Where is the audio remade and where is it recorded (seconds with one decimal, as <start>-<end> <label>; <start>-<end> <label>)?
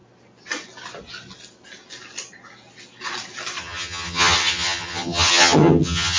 0.0-3.6 recorded; 3.6-6.2 remade